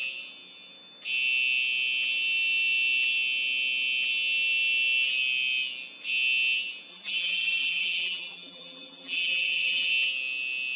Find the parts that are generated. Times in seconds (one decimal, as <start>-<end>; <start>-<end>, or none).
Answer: 6.9-9.9